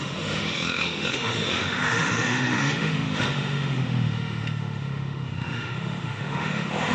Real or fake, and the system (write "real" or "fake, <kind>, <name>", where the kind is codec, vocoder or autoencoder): fake, autoencoder, DAC-VAE